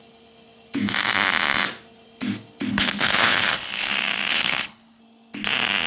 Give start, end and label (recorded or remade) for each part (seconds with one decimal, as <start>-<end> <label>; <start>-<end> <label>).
0.0-2.7 recorded; 2.7-3.9 remade; 3.9-4.3 recorded; 4.3-5.0 remade; 5.0-5.9 recorded